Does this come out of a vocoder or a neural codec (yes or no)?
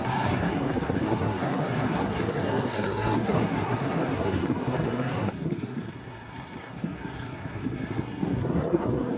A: yes